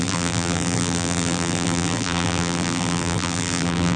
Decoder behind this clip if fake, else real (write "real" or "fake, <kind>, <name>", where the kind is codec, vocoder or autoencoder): fake, vocoder, BigVGAN v2